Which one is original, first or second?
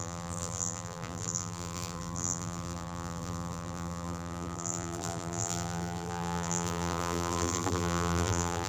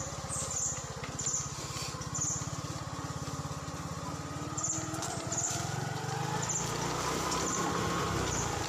second